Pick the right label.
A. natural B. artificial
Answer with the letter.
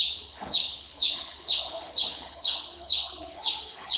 B